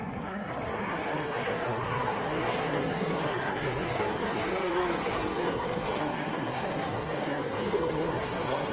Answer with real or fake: fake